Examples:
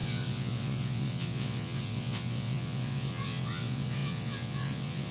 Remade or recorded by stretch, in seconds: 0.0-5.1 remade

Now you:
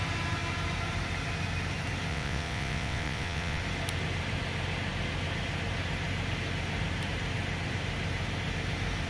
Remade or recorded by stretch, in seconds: 0.0-2.1 recorded; 2.1-3.6 remade; 3.6-9.1 recorded

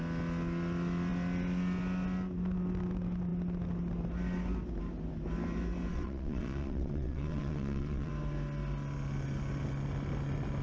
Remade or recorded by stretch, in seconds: 0.0-5.9 recorded; 5.9-8.1 remade; 8.1-10.6 recorded

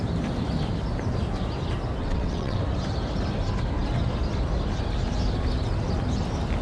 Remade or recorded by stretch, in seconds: 0.0-2.0 recorded; 2.0-2.6 remade; 2.6-6.6 recorded

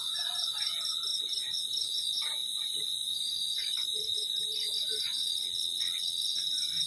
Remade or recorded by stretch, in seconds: 0.0-5.2 recorded; 5.2-6.4 remade; 6.4-6.9 recorded

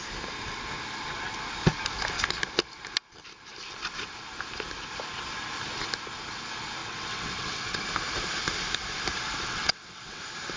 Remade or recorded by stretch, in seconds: 0.0-6.8 recorded; 6.8-7.8 remade; 7.8-9.5 recorded; 9.5-10.2 remade; 10.2-10.6 recorded

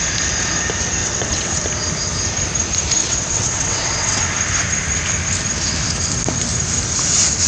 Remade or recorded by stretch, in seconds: 0.0-1.0 recorded; 1.0-1.6 remade; 1.6-3.0 recorded; 3.0-4.2 remade; 4.2-7.5 recorded